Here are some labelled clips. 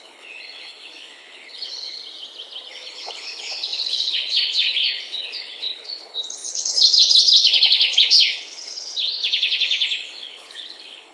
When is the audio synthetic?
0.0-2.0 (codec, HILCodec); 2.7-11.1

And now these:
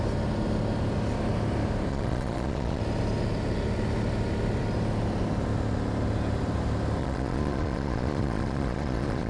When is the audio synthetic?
1.9-2.8 (vocoder, Vocos); 7.0-9.3

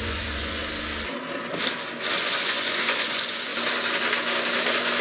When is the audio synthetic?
0.0-0.6 (vocoder, Vocos); 2.1-3.5